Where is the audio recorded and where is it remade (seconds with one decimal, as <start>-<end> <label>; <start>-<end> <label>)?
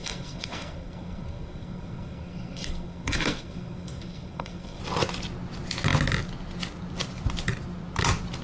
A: 0.0-4.8 remade; 4.8-8.4 recorded